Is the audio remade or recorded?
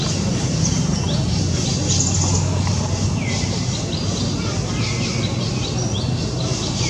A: recorded